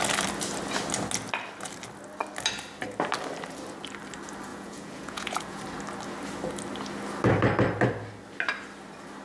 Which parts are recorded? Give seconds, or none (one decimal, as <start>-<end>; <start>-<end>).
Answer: 0.0-4.5; 5.6-9.2